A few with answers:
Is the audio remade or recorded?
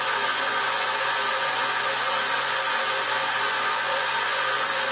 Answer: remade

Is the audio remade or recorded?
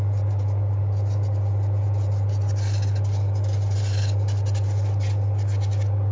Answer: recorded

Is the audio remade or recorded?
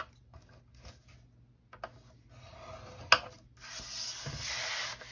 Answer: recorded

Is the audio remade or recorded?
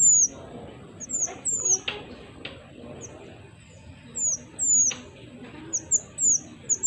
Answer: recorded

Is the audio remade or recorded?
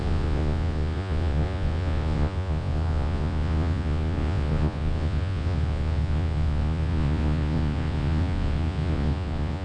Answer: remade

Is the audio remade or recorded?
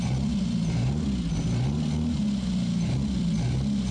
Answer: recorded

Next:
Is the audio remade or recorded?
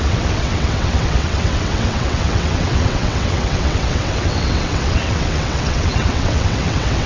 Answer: remade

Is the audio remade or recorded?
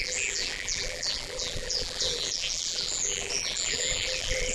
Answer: remade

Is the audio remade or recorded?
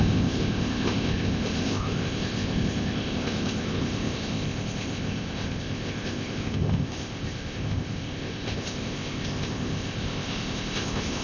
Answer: remade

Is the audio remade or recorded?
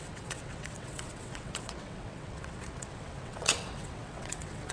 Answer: remade